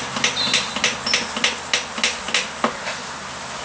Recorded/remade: recorded